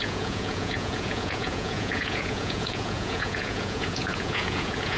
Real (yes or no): no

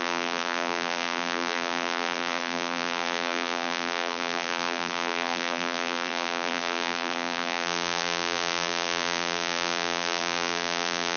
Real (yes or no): no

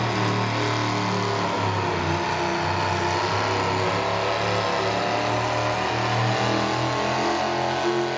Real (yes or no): yes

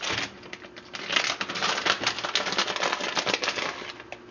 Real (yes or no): yes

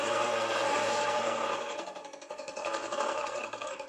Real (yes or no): no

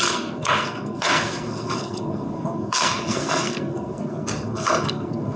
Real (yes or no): no